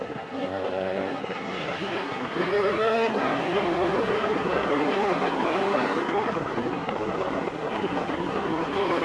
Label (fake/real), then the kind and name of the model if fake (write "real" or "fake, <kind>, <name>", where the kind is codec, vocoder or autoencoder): fake, codec, SNAC